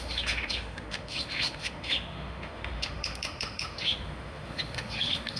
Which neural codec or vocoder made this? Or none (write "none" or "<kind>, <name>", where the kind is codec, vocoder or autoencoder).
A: autoencoder, DAC-VAE